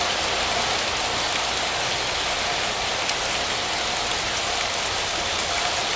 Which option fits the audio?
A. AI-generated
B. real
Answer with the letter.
B